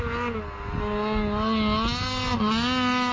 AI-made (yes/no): no